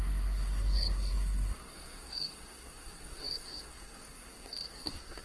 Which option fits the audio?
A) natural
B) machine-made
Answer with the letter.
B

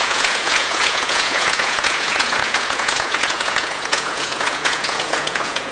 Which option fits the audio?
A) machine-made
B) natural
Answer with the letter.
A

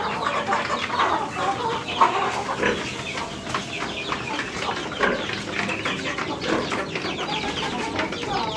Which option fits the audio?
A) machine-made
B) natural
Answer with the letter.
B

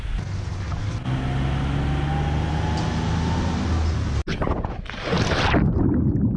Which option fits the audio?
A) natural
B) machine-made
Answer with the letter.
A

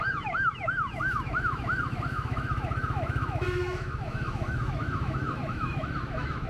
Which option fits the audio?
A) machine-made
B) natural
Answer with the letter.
A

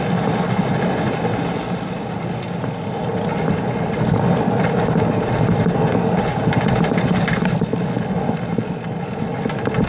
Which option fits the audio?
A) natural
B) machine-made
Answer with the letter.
A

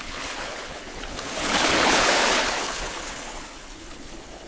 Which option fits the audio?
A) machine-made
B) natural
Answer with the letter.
A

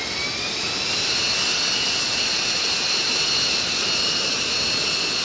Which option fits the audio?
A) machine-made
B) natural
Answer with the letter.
B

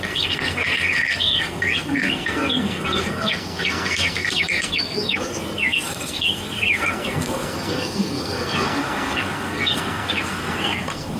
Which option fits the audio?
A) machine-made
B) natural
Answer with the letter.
A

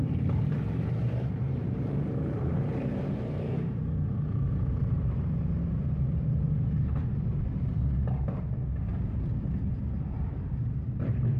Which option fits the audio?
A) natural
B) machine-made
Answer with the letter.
B